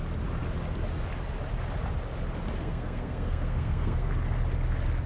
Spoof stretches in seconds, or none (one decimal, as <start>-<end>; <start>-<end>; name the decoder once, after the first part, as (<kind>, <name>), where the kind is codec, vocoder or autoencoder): 2.6-4.1 (codec, SNAC)